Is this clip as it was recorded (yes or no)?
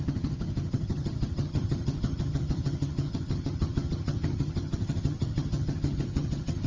no